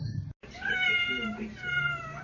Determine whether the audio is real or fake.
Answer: real